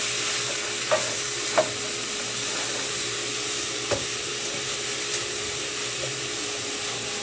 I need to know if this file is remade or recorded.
recorded